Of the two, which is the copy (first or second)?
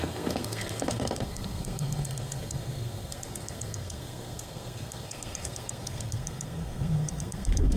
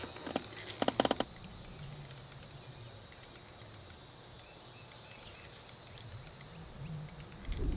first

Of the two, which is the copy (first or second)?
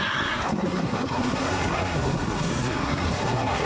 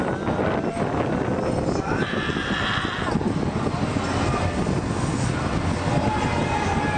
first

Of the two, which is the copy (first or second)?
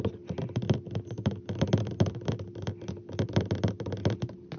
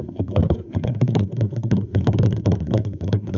second